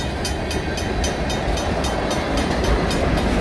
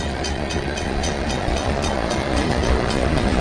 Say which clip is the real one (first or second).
first